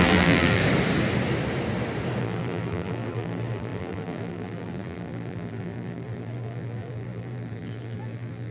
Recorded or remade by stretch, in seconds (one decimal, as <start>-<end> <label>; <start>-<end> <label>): 0.0-0.6 remade; 0.6-2.2 recorded; 2.2-8.5 remade